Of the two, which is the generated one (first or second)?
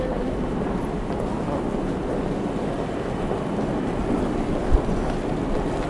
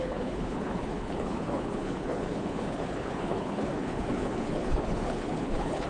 second